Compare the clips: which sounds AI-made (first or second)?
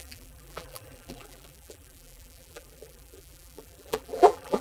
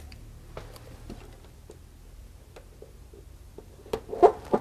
first